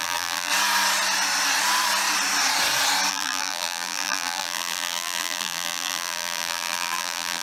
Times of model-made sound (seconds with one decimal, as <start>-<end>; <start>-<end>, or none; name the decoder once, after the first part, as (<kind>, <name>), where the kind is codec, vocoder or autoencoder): 0.0-0.5 (vocoder, BigVGAN v2); 3.1-7.4